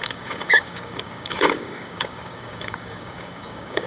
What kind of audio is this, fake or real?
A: fake